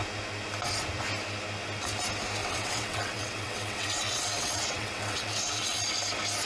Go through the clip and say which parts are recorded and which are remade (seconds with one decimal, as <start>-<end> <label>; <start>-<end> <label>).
0.0-2.4 recorded; 2.4-5.8 remade; 5.8-6.5 recorded